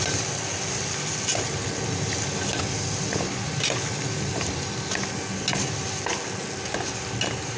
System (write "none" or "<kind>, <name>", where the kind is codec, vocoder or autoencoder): none